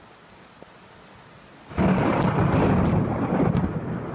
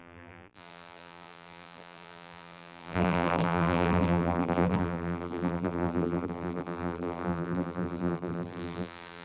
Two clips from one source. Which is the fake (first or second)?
second